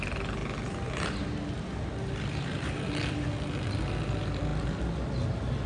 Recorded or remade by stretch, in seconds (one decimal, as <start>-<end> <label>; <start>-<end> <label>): 0.0-5.7 recorded